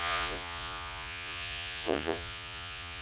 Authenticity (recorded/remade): remade